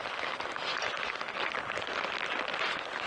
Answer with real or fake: real